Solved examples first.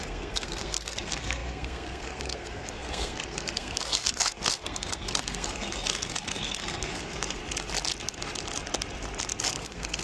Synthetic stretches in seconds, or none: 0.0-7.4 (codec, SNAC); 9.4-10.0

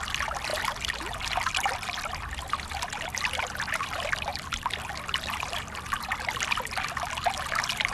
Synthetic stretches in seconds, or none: none